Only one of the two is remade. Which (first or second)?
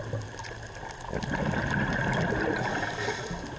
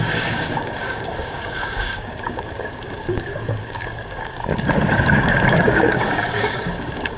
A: second